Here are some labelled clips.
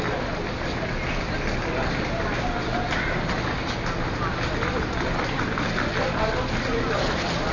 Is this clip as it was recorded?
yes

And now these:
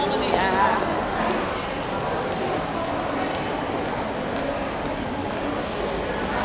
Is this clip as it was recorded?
yes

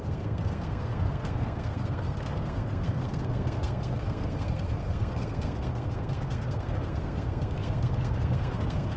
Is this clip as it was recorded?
no